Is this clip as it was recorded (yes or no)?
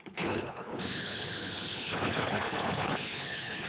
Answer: no